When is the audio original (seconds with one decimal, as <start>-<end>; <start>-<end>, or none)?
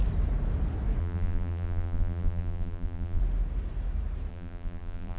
0.0-1.0; 3.2-4.3